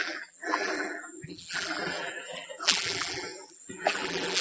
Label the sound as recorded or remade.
remade